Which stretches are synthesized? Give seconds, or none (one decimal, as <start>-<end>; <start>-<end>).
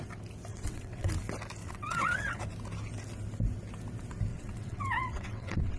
0.5-1.1; 1.6-2.4; 4.3-5.8